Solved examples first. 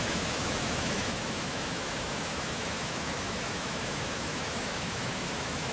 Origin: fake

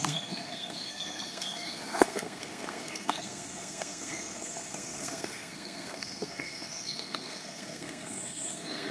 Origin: fake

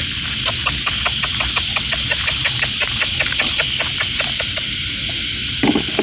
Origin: real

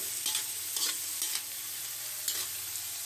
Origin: real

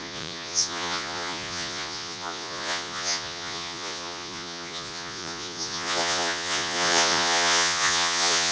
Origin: fake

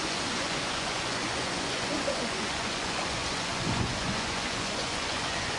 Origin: fake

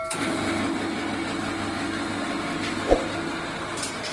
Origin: real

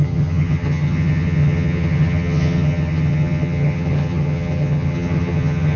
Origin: fake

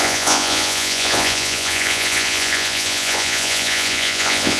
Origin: fake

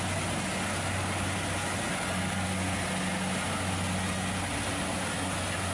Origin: real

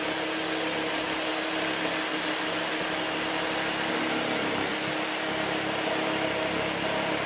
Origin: real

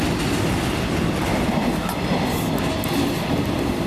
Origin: real